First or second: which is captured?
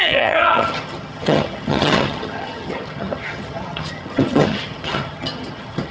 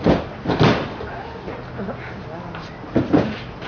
second